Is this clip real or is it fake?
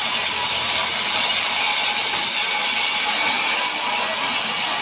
real